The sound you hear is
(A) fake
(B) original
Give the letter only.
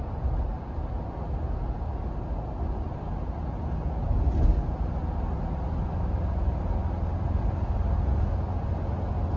B